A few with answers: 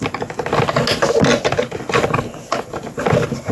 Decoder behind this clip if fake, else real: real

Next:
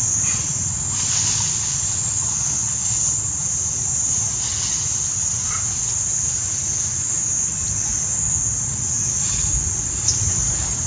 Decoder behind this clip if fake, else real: real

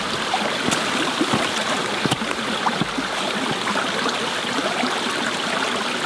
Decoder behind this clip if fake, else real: real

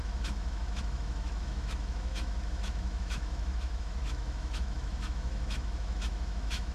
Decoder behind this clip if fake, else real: fake, autoencoder, DAC-VAE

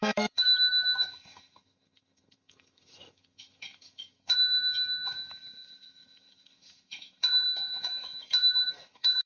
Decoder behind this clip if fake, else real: fake, autoencoder, DAC-VAE